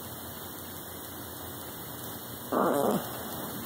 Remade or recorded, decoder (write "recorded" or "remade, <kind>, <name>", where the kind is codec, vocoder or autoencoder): recorded